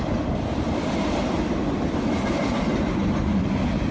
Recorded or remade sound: recorded